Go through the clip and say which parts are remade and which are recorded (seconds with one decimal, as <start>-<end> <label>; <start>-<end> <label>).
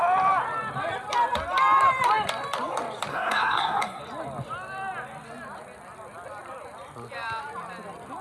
0.0-3.1 recorded; 3.1-4.0 remade; 4.0-8.2 recorded